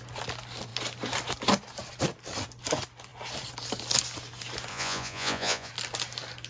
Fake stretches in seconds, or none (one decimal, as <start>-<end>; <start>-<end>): 4.7-5.7